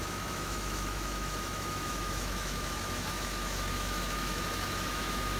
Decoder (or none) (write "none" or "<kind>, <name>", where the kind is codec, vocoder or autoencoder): autoencoder, DAC-VAE